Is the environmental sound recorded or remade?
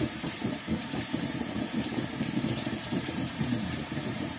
remade